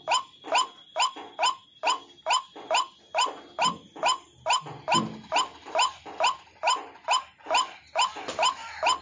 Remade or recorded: recorded